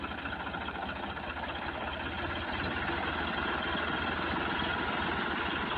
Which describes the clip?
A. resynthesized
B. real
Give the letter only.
B